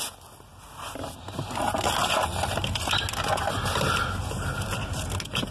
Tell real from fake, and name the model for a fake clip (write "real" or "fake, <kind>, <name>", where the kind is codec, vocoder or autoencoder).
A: real